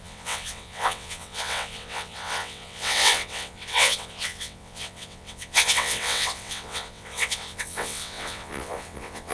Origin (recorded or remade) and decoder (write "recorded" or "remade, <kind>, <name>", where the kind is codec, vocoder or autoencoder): remade, vocoder, WaveNeXt